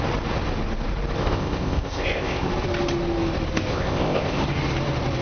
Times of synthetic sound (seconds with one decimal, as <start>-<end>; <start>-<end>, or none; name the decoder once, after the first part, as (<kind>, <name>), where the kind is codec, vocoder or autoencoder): 1.2-2.5 (codec, ZipCodec); 3.7-4.4